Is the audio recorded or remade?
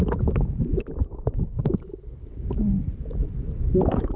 remade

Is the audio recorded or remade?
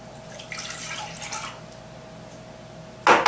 recorded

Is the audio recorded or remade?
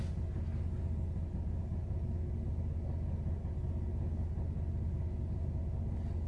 recorded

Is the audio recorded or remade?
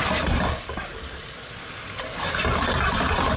recorded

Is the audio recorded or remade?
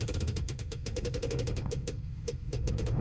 remade